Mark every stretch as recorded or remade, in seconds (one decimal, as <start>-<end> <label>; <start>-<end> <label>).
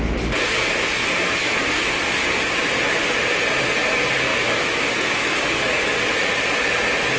0.0-1.0 recorded; 1.0-1.9 remade; 1.9-4.3 recorded; 4.3-5.6 remade; 5.6-7.2 recorded